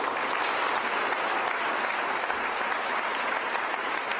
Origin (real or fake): real